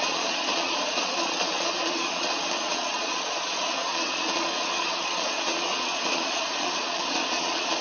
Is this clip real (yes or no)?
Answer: no